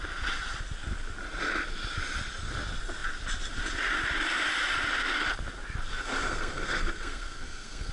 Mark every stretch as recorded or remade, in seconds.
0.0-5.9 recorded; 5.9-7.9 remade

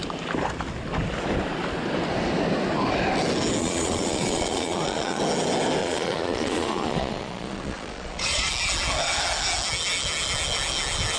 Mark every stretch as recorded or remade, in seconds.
0.0-3.6 recorded; 3.6-5.2 remade; 5.2-5.8 recorded; 5.8-8.5 remade; 8.5-11.2 recorded

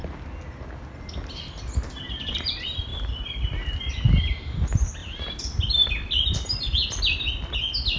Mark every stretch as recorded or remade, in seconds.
0.0-2.9 recorded; 2.9-3.9 remade; 3.9-5.0 recorded; 5.0-7.0 remade; 7.0-8.0 recorded

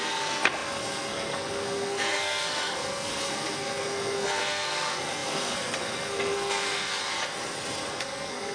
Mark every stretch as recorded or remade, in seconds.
0.0-7.0 remade; 7.0-7.9 recorded; 7.9-8.5 remade

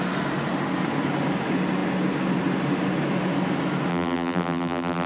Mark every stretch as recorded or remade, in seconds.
0.0-3.9 recorded; 3.9-5.1 remade

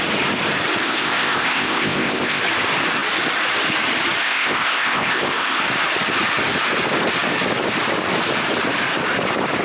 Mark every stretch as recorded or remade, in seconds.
0.0-0.8 recorded; 0.8-2.4 remade; 2.4-4.2 recorded; 4.2-5.6 remade; 5.6-9.6 recorded

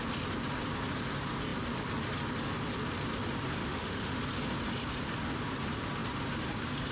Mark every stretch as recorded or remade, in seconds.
0.0-3.6 recorded; 3.6-4.2 remade; 4.2-6.9 recorded